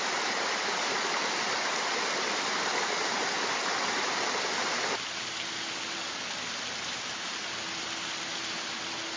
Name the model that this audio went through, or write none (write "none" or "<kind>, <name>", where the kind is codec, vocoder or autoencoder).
none